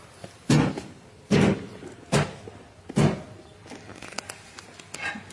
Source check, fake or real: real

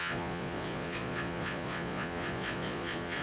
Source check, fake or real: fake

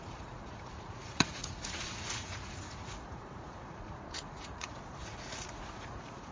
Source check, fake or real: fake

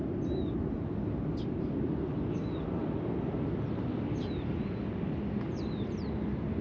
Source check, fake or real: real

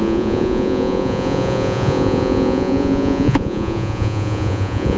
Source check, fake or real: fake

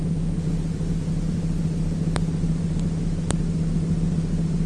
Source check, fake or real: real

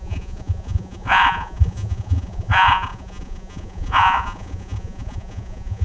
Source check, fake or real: fake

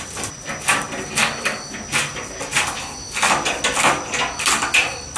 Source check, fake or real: real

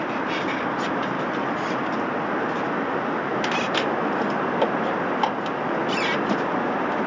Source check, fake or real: real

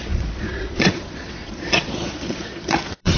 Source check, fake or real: fake